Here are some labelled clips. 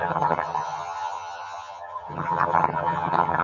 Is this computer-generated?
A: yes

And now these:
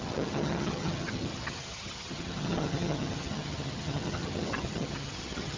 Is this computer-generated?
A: yes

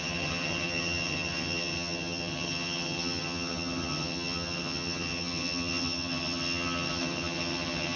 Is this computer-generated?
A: yes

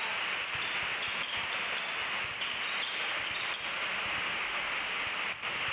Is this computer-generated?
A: no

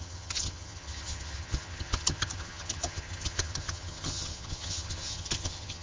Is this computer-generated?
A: yes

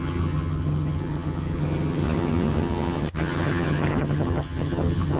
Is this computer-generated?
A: yes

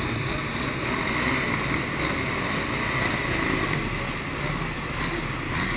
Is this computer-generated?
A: no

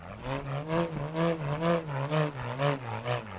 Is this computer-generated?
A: no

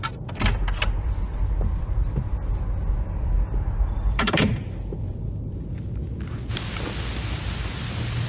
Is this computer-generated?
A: no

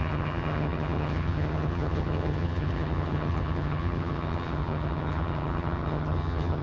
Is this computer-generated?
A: yes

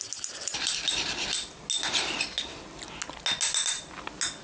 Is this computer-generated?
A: no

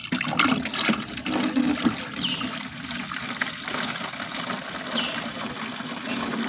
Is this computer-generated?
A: no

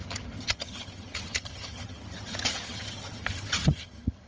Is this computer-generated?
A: yes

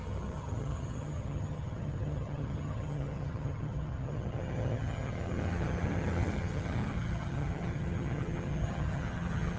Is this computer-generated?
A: yes